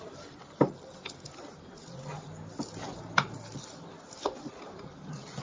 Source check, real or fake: real